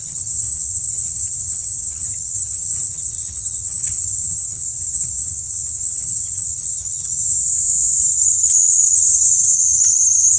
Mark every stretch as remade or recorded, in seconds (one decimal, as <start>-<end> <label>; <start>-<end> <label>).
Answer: 0.0-7.4 remade; 7.4-8.0 recorded; 8.0-10.4 remade